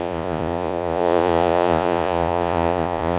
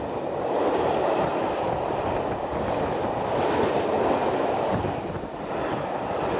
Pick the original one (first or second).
second